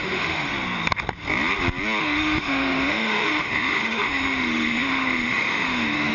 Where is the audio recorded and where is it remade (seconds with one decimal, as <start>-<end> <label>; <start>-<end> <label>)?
0.0-0.5 remade; 0.5-2.0 recorded; 2.0-6.1 remade